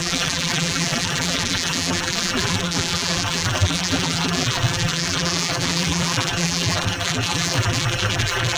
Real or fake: fake